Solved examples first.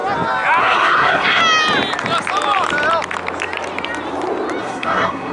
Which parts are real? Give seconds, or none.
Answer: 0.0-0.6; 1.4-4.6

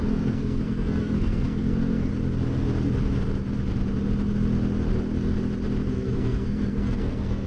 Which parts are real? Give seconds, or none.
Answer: 2.1-5.9

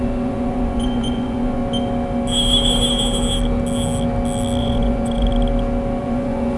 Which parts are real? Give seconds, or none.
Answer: 1.6-4.6; 5.3-6.0

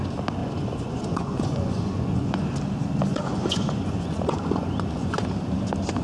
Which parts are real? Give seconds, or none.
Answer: 0.0-0.4; 2.5-3.1; 5.3-6.0

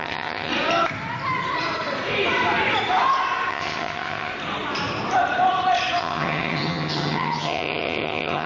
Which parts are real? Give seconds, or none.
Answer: 0.5-3.5; 4.3-6.0

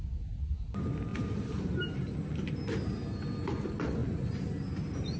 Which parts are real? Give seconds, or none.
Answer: 0.0-1.1; 2.5-4.0

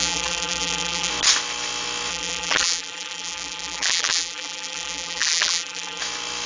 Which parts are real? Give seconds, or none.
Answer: 1.1-2.1; 6.0-6.5

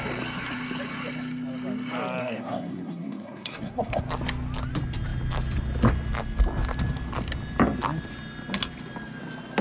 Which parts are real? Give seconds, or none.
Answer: 0.0-2.2; 4.0-9.6